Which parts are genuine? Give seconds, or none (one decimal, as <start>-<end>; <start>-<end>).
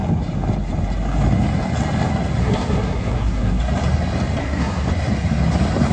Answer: 0.0-2.4; 3.6-4.4; 4.9-5.9